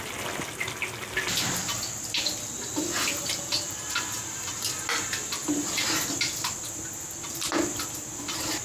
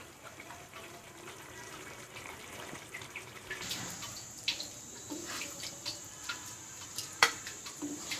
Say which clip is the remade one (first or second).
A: second